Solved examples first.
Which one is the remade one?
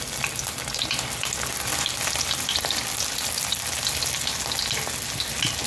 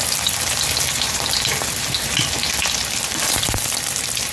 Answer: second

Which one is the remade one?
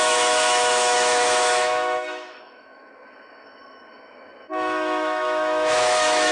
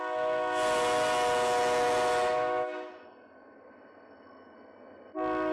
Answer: first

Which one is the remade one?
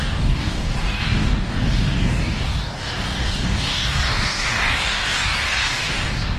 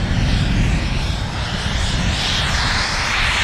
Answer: first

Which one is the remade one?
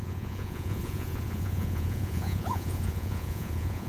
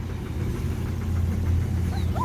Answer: first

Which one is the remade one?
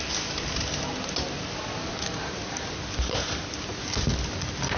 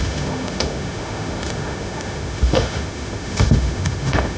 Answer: second